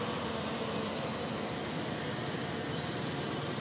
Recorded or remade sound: recorded